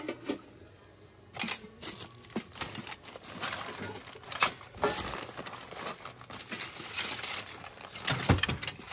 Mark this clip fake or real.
real